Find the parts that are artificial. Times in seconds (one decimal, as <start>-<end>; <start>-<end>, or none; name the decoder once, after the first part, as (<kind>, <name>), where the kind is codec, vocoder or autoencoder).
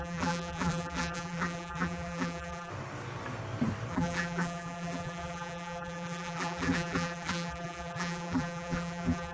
0.0-2.7 (vocoder, BigVGAN v2); 3.9-9.3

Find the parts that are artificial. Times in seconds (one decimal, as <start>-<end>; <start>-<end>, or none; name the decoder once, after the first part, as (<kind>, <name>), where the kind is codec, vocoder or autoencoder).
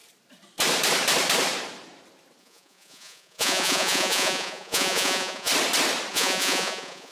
2.4-5.5 (vocoder, Vocos); 6.1-7.1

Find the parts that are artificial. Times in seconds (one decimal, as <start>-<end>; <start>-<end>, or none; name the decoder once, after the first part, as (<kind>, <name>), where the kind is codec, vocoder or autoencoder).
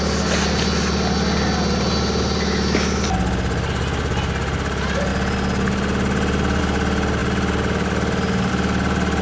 none